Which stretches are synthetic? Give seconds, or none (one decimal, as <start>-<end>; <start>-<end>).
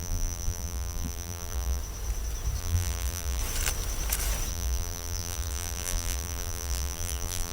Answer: 0.0-1.8; 2.6-3.4; 4.5-7.5